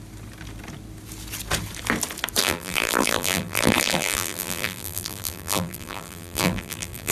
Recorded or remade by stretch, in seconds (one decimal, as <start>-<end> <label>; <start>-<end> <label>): 0.0-2.4 recorded; 2.4-7.1 remade